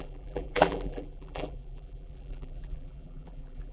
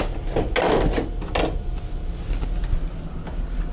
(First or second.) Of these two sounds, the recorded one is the second